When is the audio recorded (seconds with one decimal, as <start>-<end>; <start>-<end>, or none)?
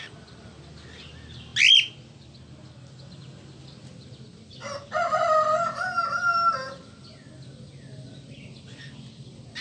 0.0-9.6